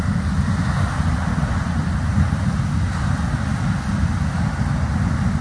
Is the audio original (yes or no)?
yes